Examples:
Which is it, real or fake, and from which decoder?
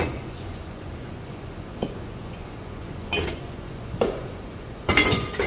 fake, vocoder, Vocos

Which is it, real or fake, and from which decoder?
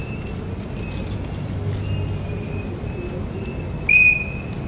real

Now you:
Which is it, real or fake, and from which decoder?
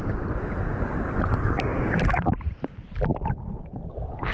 real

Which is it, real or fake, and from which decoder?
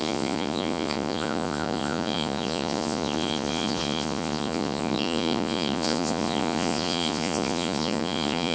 fake, vocoder, Vocos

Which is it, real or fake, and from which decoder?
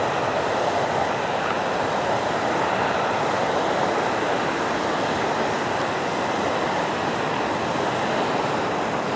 real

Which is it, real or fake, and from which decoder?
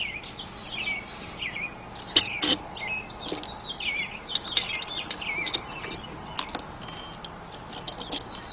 real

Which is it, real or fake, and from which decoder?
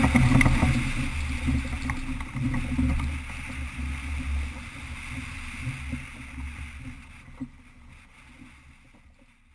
real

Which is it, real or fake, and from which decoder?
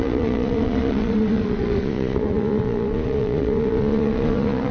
fake, vocoder, Vocos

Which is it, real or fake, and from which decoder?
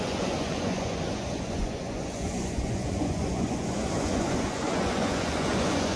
fake, vocoder, Vocos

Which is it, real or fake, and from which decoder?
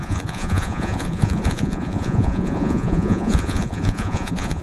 fake, vocoder, Vocos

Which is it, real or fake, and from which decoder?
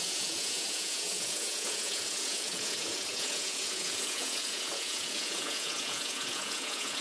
fake, vocoder, Vocos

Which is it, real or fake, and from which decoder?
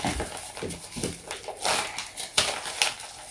real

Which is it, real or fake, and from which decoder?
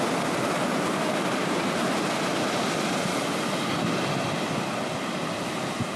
real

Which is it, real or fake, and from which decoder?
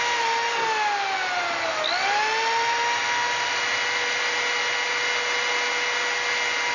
real